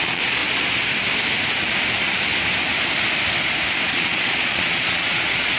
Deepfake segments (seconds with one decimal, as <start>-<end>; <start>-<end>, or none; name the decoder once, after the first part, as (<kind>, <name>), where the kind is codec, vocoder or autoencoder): 0.0-0.4 (vocoder, Vocos); 3.8-5.6